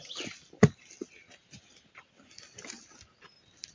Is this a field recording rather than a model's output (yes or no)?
yes